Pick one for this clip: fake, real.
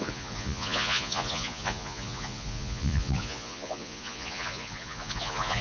fake